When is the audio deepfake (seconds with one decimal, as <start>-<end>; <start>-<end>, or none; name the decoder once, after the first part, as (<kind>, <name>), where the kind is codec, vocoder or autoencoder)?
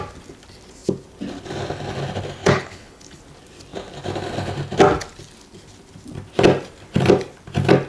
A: 2.4-3.2 (codec, HILCodec)